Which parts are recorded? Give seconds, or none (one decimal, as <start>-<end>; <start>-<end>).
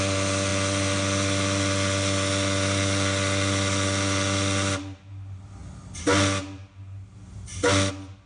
0.0-8.3